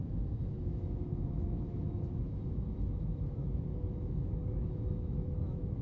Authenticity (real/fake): fake